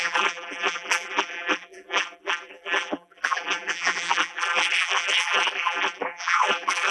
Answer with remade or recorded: remade